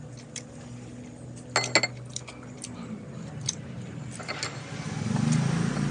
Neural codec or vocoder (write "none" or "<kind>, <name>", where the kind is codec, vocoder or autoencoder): none